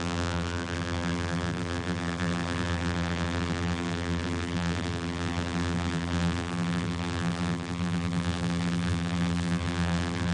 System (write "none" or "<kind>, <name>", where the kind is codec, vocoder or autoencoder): vocoder, BigVGAN v2